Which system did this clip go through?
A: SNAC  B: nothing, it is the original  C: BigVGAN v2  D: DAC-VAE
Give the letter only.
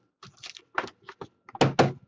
B